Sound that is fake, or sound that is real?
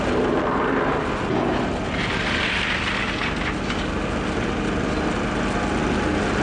real